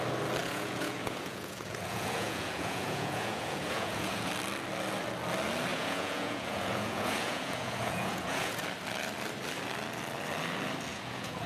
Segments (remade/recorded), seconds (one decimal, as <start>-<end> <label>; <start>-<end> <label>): 0.0-0.4 recorded; 0.4-4.3 remade; 4.3-5.7 recorded; 5.7-8.6 remade; 8.6-10.9 recorded; 10.9-11.5 remade